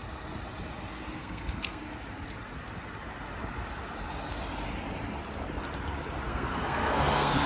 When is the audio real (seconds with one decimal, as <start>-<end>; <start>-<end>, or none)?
0.0-1.2; 1.8-6.3